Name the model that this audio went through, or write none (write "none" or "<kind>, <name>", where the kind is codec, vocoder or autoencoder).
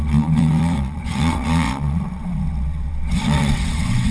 vocoder, WaveNeXt